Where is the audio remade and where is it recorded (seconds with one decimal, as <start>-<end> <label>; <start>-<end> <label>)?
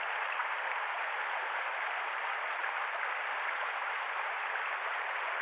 0.0-5.4 recorded